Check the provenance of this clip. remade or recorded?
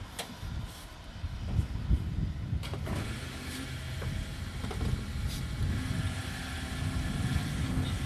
recorded